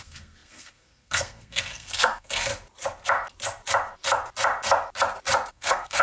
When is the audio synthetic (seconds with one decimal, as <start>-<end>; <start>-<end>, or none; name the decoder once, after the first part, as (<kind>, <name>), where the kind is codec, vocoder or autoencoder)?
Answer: 0.0-2.5 (codec, SNAC); 5.5-6.0